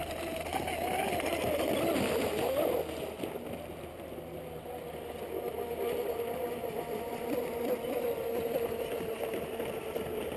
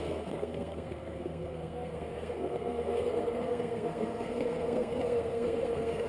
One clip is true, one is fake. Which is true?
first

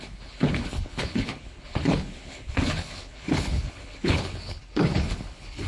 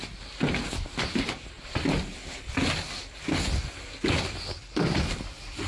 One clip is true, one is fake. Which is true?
second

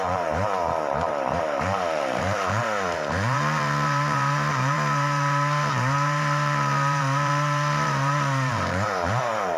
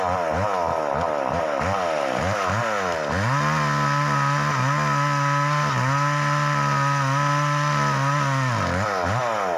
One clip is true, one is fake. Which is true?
second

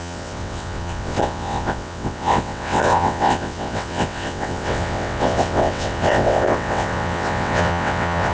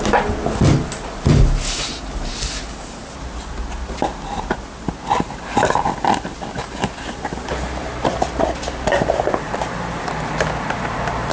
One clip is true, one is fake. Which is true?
second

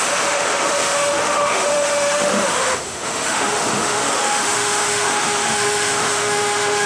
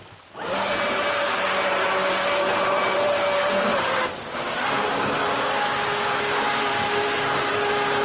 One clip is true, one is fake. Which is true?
second